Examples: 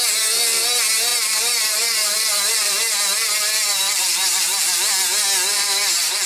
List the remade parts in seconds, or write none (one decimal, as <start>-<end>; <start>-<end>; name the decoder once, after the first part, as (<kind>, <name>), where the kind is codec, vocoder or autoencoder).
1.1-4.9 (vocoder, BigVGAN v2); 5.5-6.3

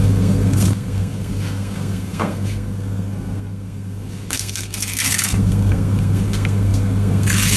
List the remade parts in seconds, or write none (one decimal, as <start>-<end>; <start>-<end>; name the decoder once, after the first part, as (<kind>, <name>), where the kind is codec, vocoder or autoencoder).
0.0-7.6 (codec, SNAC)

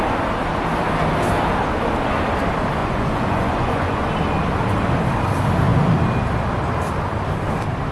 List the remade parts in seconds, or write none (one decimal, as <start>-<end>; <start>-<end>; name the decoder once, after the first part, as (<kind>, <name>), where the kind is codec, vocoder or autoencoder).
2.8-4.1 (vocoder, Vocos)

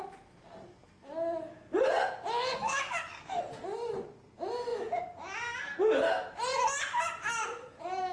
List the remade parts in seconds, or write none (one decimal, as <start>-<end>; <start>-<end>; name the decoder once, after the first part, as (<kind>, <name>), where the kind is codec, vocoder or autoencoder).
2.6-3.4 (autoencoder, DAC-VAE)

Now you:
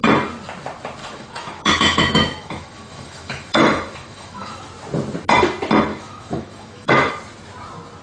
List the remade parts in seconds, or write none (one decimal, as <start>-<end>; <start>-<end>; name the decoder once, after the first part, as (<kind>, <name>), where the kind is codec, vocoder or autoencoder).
1.0-4.6 (autoencoder, DAC-VAE); 5.9-7.1